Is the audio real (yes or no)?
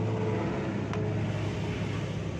yes